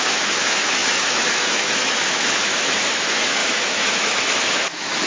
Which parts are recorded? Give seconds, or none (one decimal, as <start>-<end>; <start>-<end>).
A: none